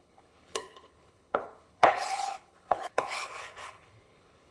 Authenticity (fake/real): fake